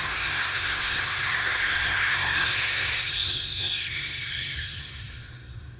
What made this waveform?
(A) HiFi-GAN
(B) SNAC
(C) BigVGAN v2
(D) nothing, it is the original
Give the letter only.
B